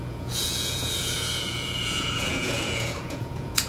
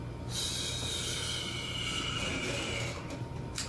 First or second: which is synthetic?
first